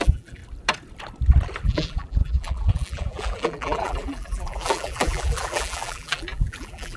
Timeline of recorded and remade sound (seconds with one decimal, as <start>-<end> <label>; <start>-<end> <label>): 0.0-0.4 remade; 0.4-1.6 recorded; 1.6-7.0 remade

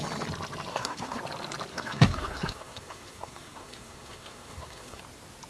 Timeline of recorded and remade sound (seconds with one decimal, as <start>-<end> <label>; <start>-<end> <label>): 0.0-0.7 recorded; 0.7-1.2 remade; 1.2-1.7 recorded; 1.7-5.0 remade; 5.0-5.5 recorded

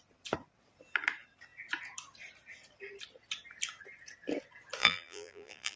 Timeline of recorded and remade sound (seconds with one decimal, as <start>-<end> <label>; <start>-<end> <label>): 0.0-4.8 recorded; 4.8-5.8 remade

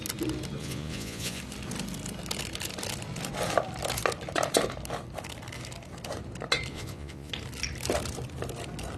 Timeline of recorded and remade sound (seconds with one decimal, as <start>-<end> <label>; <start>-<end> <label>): 0.0-0.6 recorded; 0.6-1.4 remade; 1.4-6.7 recorded; 6.7-7.3 remade; 7.3-9.0 recorded

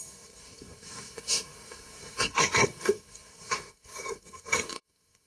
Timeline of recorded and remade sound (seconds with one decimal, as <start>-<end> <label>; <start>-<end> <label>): 0.0-5.3 remade